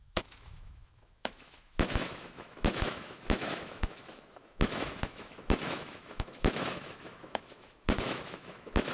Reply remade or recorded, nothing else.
remade